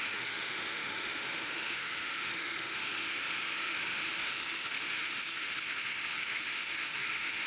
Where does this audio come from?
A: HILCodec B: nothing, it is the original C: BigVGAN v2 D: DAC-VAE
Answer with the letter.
D